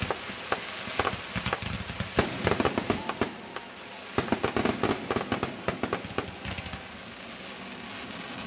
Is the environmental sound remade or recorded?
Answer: recorded